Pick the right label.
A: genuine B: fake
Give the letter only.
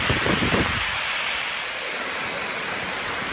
B